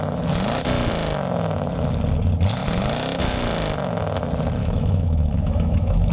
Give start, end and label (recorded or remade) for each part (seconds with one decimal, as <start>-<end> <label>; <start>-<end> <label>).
0.0-4.6 recorded; 4.6-6.1 remade